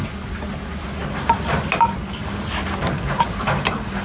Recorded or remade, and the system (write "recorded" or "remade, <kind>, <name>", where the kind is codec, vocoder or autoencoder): recorded